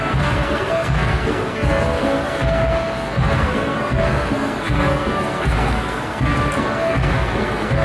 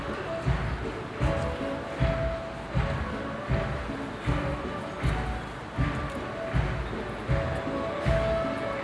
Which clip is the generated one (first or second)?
first